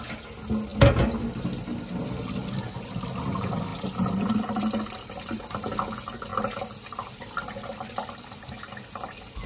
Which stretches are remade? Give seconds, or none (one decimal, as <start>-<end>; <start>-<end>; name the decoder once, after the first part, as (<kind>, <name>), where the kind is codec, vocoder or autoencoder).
none